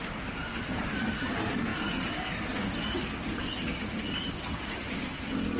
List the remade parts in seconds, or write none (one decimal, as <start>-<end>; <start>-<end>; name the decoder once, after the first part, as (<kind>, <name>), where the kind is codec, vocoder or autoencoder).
0.4-1.2 (vocoder, BigVGAN v2)